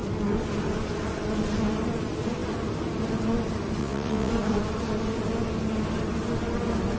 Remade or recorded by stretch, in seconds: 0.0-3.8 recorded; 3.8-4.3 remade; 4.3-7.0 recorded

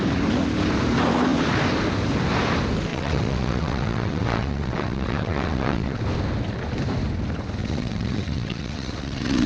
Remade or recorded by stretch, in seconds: 0.0-2.9 recorded; 2.9-6.0 remade; 6.0-7.6 recorded; 7.6-9.5 remade

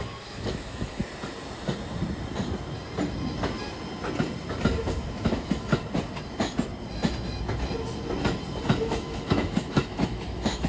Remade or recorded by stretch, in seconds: 0.0-1.0 remade; 1.0-5.0 recorded; 5.0-5.7 remade; 5.7-8.6 recorded; 8.6-10.7 remade